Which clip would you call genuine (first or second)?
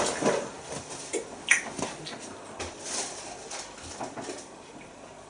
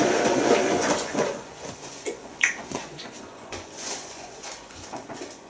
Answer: first